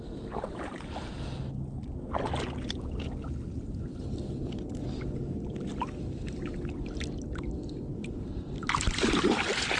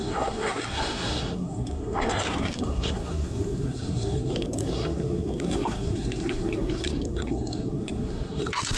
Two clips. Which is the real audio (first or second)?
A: first